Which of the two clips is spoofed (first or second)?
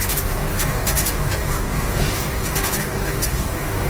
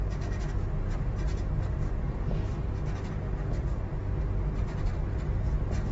first